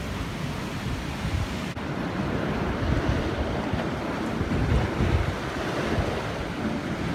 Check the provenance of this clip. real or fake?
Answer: real